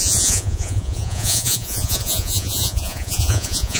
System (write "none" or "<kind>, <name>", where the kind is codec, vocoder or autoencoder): vocoder, Vocos